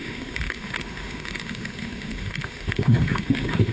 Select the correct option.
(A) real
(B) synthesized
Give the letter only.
B